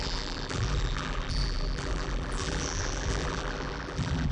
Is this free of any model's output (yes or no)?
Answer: no